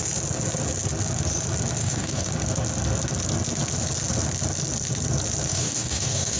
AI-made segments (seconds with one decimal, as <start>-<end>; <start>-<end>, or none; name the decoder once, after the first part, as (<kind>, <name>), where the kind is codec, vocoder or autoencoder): 1.8-2.3 (codec, DAC); 5.5-6.4

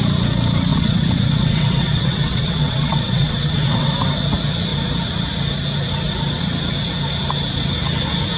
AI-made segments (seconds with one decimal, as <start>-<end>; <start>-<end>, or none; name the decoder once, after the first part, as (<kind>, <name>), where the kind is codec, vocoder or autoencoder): 0.7-3.9 (vocoder, WaveNeXt)

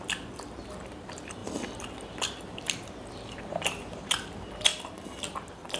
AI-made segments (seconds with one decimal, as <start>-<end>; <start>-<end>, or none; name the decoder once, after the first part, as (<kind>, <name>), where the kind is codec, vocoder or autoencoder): 1.4-4.1 (vocoder, BigVGAN v2); 4.7-5.8

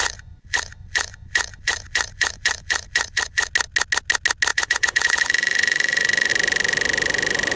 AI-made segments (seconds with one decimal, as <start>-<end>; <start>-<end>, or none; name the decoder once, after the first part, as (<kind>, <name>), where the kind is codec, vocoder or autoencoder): 0.0-3.5 (vocoder, Vocos); 4.5-6.3

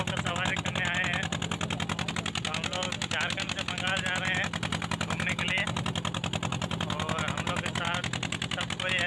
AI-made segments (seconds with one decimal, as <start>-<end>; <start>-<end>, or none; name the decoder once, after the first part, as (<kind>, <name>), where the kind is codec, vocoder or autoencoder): none

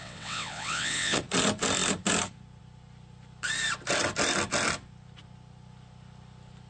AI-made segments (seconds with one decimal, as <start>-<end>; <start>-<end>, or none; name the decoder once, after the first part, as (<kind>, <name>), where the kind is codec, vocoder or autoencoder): 0.0-1.2 (vocoder, WaveNeXt)

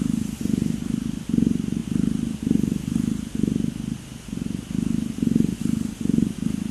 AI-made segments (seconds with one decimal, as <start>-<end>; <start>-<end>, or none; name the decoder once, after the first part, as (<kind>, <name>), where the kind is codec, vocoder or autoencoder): none